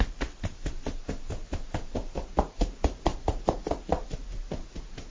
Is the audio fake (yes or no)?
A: no